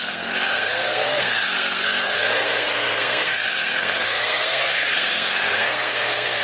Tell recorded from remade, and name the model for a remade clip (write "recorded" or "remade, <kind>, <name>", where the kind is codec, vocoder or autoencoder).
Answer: remade, codec, SNAC